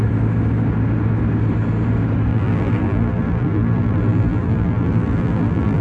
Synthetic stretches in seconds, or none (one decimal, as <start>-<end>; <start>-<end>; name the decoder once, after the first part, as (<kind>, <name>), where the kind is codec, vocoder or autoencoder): 2.3-5.8 (vocoder, BigVGAN v2)

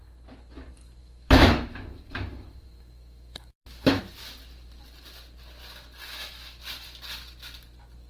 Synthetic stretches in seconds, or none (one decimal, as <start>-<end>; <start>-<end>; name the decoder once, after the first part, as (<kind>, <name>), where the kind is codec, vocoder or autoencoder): 1.0-4.0 (autoencoder, DAC-VAE); 6.0-6.6

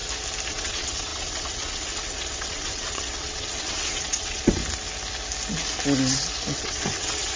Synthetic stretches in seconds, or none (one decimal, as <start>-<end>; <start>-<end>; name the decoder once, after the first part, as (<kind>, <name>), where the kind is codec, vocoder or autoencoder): 0.5-4.6 (vocoder, WaveNeXt); 6.5-7.4

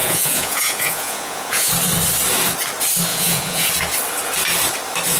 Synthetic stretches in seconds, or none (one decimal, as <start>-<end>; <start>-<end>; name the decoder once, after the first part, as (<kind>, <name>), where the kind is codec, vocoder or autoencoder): 0.0-1.7 (vocoder, Vocos); 3.1-3.7

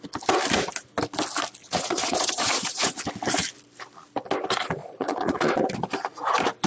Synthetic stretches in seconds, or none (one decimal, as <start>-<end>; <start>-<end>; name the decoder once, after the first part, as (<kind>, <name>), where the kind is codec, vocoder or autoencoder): 1.6-3.0 (vocoder, Vocos); 4.8-5.7

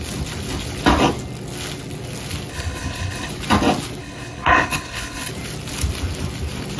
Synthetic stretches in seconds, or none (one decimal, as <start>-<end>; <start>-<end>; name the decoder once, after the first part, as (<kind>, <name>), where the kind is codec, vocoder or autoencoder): 2.5-3.3 (codec, HILCodec); 4.0-5.3